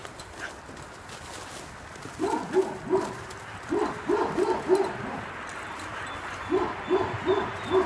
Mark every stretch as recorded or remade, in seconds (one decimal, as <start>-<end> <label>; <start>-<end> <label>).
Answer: 0.0-7.9 recorded

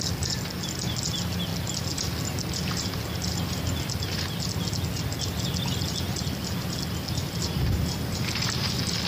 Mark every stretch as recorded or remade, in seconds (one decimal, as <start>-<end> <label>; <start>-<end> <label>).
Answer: 0.0-9.1 recorded

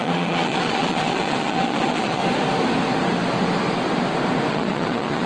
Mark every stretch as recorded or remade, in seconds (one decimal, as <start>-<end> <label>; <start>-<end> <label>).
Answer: 0.0-2.2 remade; 2.2-4.5 recorded; 4.5-5.3 remade

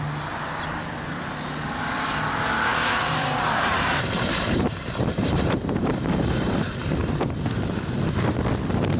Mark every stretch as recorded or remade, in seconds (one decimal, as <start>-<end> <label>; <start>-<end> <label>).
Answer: 0.0-2.7 recorded; 2.7-6.7 remade; 6.7-9.0 recorded

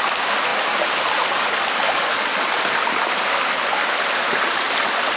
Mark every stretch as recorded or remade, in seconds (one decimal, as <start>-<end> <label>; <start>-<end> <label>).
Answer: 0.0-5.2 recorded

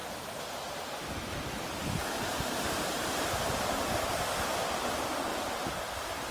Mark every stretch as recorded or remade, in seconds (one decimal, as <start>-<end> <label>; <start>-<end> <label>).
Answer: 0.0-1.1 recorded; 1.1-5.3 remade; 5.3-6.3 recorded

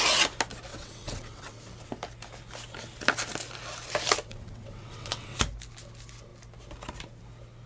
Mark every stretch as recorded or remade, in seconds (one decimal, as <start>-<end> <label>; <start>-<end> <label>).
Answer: 0.0-0.7 recorded; 0.7-1.6 remade; 1.6-4.3 recorded; 4.3-5.4 remade; 5.4-7.7 recorded

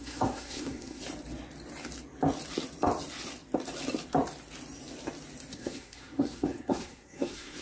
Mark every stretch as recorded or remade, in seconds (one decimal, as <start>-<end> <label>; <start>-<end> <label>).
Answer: 0.0-1.0 remade; 1.0-5.5 recorded; 5.5-7.6 remade